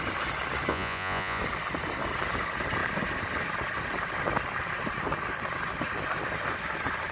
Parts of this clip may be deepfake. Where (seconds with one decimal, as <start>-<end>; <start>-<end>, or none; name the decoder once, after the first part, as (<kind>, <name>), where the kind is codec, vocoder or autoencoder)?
0.7-1.4 (vocoder, Vocos)